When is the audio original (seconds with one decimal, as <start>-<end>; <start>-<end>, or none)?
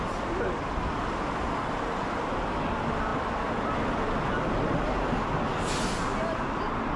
0.0-7.0